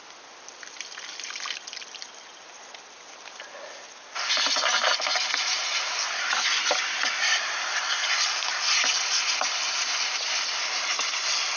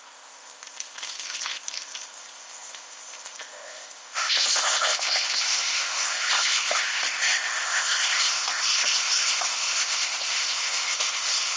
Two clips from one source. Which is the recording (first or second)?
first